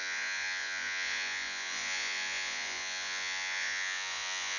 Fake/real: fake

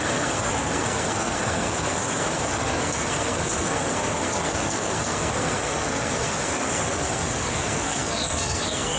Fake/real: fake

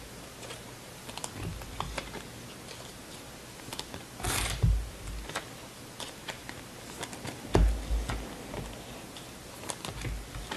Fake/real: real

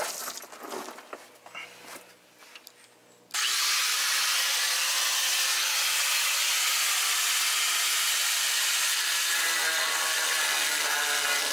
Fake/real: real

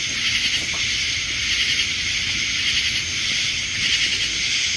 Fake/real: real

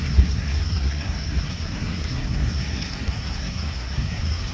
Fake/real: fake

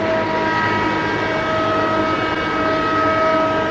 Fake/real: real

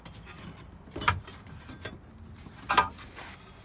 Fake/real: real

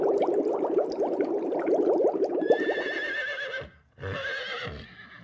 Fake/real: real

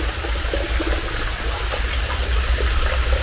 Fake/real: real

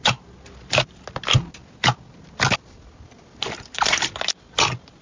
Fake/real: real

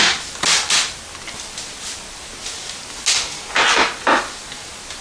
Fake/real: real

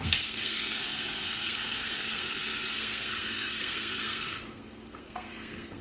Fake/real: fake